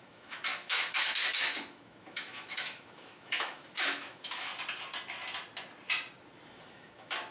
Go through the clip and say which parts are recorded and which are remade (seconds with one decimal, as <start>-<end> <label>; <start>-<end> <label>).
0.0-4.5 remade; 4.5-6.7 recorded; 6.7-7.3 remade